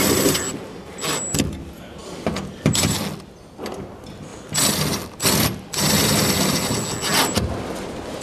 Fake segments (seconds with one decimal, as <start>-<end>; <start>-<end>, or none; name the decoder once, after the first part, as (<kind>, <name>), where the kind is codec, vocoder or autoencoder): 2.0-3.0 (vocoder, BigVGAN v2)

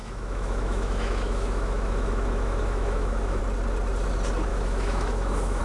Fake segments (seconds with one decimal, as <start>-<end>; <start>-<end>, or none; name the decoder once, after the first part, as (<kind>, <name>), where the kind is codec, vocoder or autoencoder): 0.0-3.4 (autoencoder, DAC-VAE); 4.5-5.6

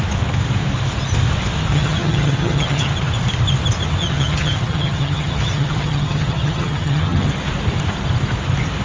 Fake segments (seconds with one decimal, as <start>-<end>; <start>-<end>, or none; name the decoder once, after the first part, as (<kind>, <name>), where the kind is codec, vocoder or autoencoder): 1.7-2.9 (vocoder, HiFi-GAN); 4.0-7.3

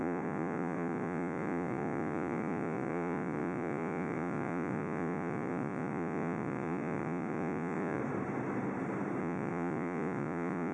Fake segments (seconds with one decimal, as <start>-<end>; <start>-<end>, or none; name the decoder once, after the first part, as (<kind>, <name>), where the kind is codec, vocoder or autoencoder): 0.0-8.0 (vocoder, Vocos); 9.2-10.7